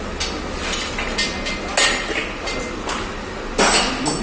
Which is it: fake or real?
real